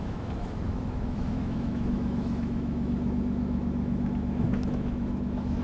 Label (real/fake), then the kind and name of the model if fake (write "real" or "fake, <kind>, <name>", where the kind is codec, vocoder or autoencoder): fake, autoencoder, DAC-VAE